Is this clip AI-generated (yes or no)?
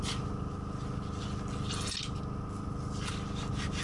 no